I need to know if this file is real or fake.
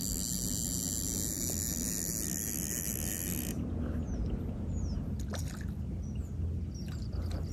real